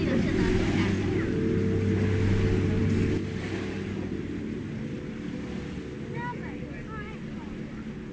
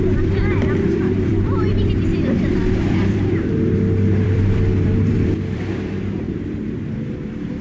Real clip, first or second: first